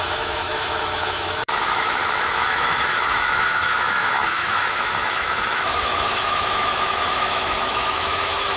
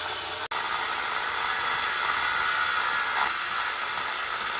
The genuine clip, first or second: second